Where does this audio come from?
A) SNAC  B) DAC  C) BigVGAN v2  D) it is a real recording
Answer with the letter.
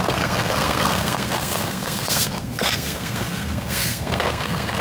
A